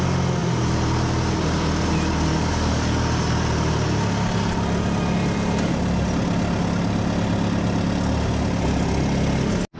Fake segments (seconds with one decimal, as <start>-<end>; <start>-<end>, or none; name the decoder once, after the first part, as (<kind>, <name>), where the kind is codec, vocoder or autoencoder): 2.3-2.9 (codec, DAC)